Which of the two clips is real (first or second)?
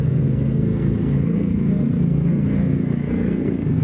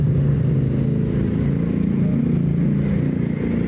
second